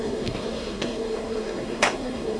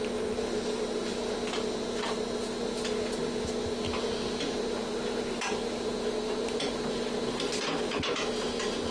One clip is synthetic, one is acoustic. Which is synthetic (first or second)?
first